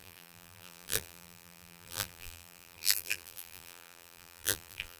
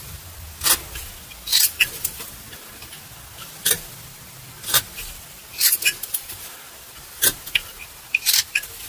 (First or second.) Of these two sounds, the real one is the second